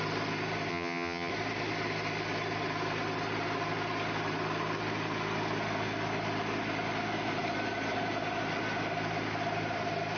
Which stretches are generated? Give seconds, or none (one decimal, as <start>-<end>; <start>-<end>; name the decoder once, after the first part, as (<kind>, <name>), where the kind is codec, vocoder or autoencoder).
0.7-1.3 (vocoder, HiFi-GAN)